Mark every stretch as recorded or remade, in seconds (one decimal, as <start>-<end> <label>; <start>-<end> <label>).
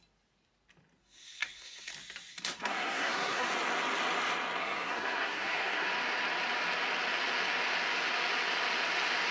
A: 0.0-1.0 recorded; 1.0-1.9 remade; 1.9-2.3 recorded; 2.3-3.5 remade; 3.5-4.6 recorded; 4.6-5.9 remade; 5.9-9.3 recorded